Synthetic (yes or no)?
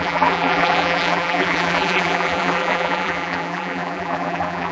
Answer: yes